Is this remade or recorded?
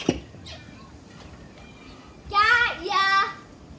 recorded